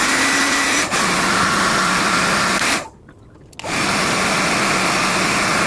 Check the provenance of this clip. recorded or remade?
recorded